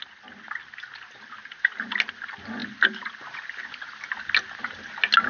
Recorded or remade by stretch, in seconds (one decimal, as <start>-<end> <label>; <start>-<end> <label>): 0.0-5.3 recorded